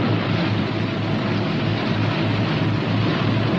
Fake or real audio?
real